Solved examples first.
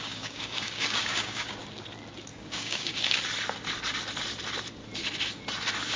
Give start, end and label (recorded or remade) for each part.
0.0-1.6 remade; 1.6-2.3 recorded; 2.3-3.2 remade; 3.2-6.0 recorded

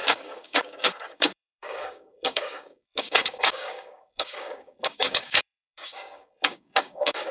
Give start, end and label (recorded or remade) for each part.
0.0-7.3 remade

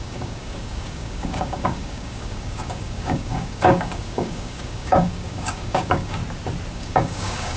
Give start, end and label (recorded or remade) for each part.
0.0-6.2 remade; 6.2-6.7 recorded; 6.7-7.6 remade

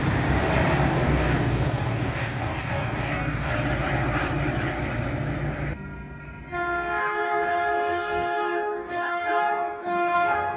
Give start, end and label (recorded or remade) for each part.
0.0-0.9 recorded; 0.9-3.5 remade; 3.5-7.0 recorded; 7.0-10.6 remade

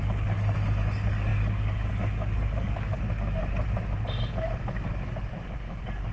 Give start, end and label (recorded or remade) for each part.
0.0-3.4 remade; 3.4-4.3 recorded; 4.3-6.1 remade